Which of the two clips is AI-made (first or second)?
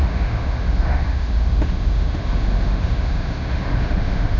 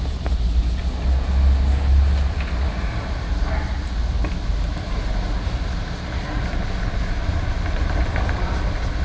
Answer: first